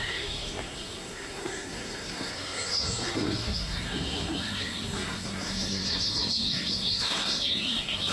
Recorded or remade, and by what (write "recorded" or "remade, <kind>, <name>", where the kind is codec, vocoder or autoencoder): remade, codec, SNAC